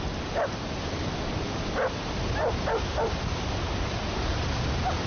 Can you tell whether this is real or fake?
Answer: real